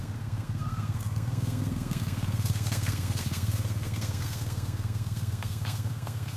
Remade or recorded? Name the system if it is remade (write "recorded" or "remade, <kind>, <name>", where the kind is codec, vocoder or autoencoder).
remade, codec, SNAC